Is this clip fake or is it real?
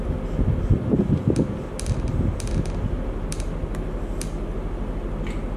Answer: real